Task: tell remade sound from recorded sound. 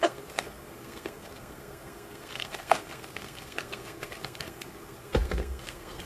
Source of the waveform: remade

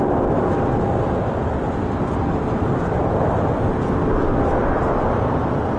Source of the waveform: recorded